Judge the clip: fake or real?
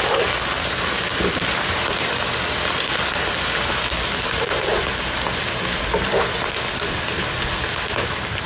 real